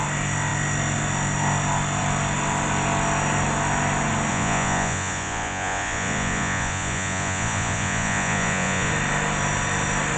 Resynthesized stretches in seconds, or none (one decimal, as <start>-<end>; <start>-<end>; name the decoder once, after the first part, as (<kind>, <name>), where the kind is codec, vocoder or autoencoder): 4.3-8.9 (vocoder, Vocos)